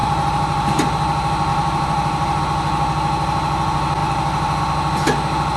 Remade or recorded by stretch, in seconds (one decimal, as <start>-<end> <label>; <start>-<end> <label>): 0.0-0.7 remade; 0.7-1.5 recorded; 1.5-2.4 remade; 2.4-4.0 recorded; 4.0-4.6 remade; 4.6-5.6 recorded